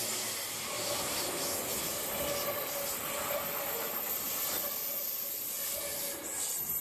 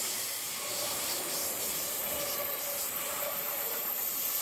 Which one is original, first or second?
first